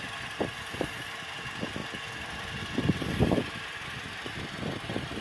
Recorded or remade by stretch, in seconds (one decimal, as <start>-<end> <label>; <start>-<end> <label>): 0.0-5.2 recorded